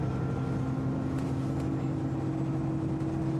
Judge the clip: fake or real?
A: real